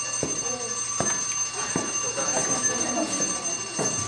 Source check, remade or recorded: recorded